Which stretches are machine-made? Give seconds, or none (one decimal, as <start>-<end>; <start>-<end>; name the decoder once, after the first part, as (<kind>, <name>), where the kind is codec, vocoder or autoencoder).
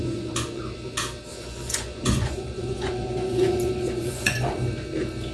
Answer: 0.0-0.6 (vocoder, Vocos); 1.3-4.5